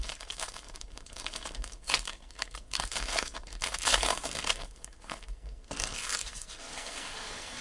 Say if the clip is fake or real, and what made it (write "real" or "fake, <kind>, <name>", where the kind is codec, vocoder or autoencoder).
fake, codec, SNAC